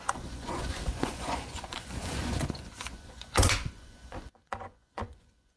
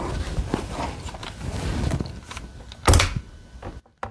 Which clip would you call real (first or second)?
second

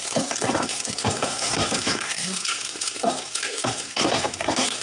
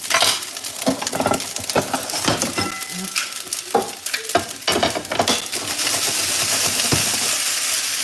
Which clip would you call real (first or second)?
second